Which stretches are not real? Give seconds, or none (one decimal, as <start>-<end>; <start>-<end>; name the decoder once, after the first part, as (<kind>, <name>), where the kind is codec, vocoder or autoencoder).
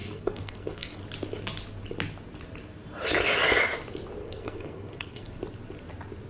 0.0-1.0 (codec, SNAC); 4.2-5.4